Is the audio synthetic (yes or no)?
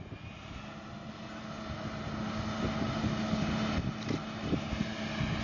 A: no